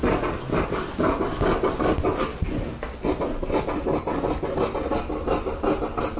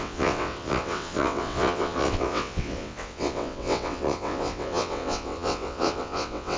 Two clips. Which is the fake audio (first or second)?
second